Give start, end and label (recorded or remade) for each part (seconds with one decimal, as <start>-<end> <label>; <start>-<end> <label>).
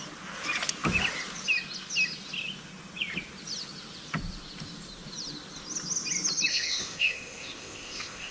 0.0-6.5 recorded; 6.5-8.3 remade